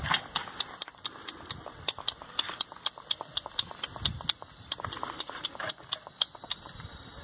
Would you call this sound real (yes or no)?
no